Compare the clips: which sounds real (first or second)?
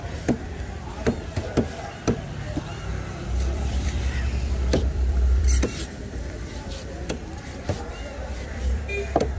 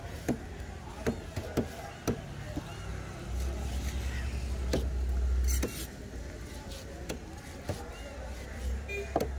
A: second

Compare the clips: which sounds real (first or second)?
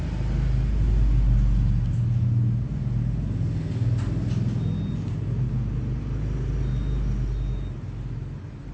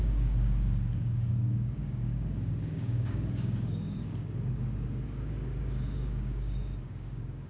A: first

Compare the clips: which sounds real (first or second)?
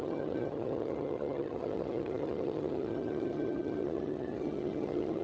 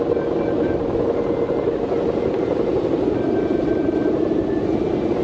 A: second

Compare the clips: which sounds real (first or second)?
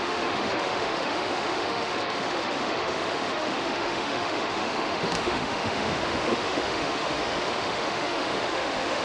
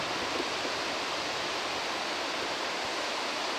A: second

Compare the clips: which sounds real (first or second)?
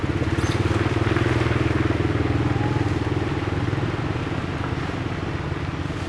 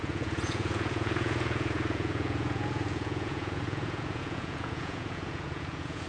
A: first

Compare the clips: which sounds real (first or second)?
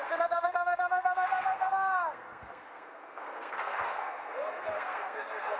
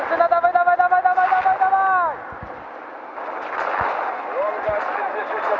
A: second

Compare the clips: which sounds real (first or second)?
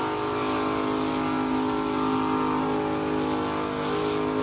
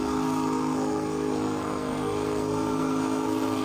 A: first